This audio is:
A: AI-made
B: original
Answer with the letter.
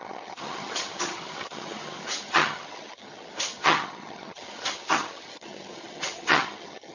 A